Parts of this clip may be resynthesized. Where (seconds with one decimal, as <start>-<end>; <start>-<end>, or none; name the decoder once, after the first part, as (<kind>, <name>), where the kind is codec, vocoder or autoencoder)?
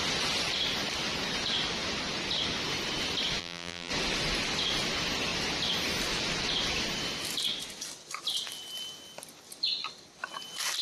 3.4-3.9 (vocoder, BigVGAN v2)